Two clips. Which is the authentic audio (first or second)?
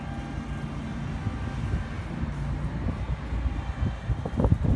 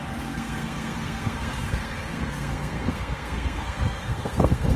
first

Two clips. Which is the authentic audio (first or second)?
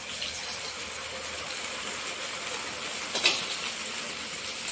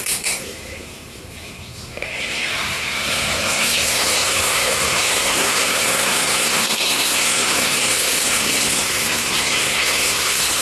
first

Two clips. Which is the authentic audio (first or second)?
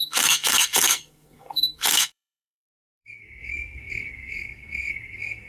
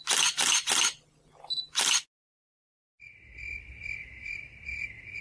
second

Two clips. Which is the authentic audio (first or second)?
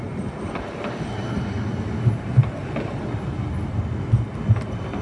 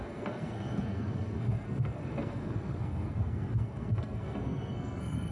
first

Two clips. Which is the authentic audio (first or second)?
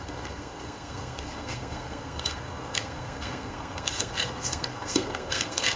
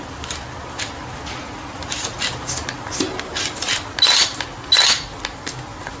second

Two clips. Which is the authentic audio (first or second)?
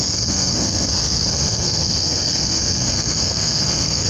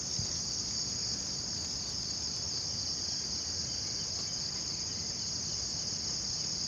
second